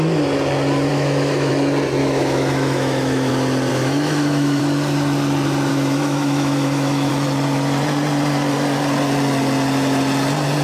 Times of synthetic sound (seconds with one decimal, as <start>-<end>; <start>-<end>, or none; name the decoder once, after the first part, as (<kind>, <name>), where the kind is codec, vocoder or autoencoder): 0.9-1.5 (autoencoder, DAC-VAE); 2.0-3.3; 3.7-4.6; 5.7-7.1